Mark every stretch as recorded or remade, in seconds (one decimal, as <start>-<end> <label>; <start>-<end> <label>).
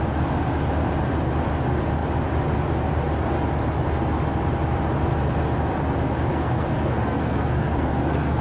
0.0-6.3 recorded; 6.3-8.4 remade